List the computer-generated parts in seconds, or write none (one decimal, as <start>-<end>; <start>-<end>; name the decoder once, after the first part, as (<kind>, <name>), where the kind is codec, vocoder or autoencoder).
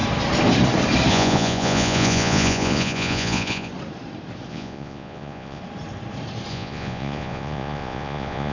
1.1-3.7 (vocoder, Vocos); 4.5-5.6; 6.5-8.5